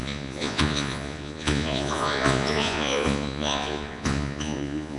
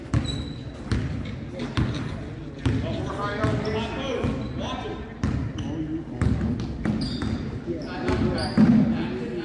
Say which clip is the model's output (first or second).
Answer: first